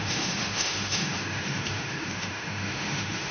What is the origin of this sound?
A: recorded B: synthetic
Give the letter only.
B